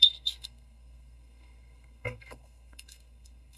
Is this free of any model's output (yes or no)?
no